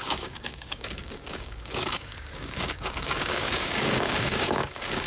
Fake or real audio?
fake